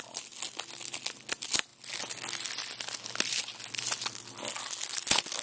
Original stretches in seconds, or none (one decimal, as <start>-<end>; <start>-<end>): 0.0-5.4